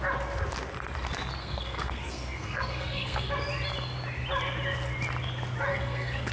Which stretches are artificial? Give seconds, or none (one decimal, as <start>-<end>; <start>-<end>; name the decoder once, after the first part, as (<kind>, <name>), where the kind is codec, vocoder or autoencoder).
1.4-3.3 (codec, SNAC); 5.7-6.3